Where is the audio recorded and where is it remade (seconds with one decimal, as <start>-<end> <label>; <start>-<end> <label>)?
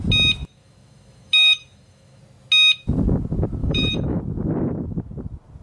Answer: 0.0-0.4 recorded; 0.4-2.2 remade; 2.2-3.6 recorded; 3.6-4.2 remade; 4.2-5.6 recorded